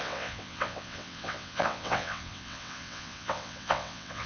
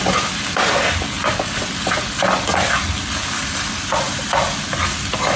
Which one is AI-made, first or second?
first